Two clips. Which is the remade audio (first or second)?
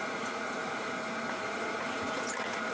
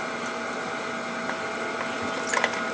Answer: first